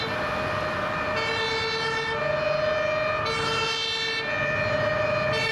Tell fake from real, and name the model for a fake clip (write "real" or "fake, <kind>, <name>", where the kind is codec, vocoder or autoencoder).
real